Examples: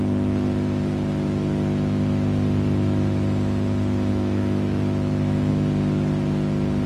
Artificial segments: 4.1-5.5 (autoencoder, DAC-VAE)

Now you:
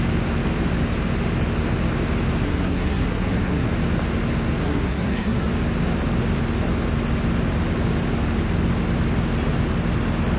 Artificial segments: 2.4-3.7 (codec, SNAC); 4.6-5.5

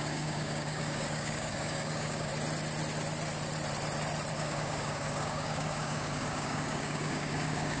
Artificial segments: 0.0-2.3 (codec, DAC); 4.3-7.8

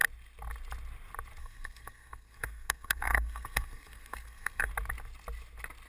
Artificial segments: 1.4-4.7 (codec, SNAC)